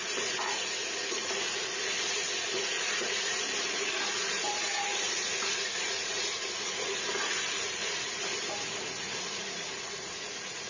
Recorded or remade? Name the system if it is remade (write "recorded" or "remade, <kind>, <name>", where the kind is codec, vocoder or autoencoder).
remade, vocoder, Vocos